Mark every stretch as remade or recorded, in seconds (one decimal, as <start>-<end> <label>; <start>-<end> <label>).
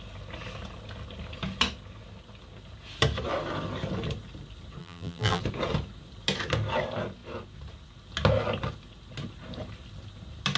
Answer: 0.0-4.8 recorded; 4.8-5.4 remade; 5.4-10.6 recorded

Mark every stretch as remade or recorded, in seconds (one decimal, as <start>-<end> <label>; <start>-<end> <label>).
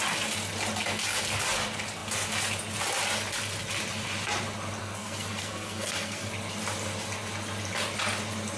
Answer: 0.0-4.8 recorded; 4.8-6.3 remade; 6.3-8.6 recorded